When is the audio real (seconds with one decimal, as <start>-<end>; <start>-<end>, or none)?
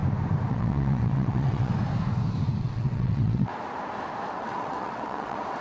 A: 0.0-0.5; 1.7-2.6; 3.5-4.3